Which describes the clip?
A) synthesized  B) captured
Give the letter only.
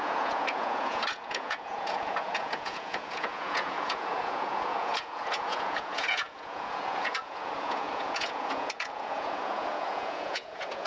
A